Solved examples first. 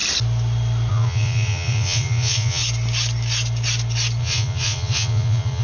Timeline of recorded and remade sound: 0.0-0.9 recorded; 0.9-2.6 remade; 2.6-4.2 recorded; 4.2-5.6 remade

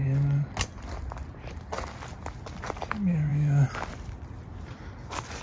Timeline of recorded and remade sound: 0.0-5.4 recorded

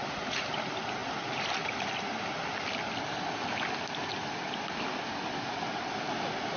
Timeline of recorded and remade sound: 0.0-0.5 remade; 0.5-6.6 recorded

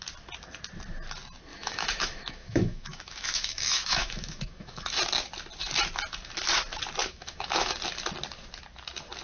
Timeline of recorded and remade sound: 0.0-1.5 recorded; 1.5-5.0 remade; 5.0-7.0 recorded; 7.0-7.7 remade; 7.7-9.2 recorded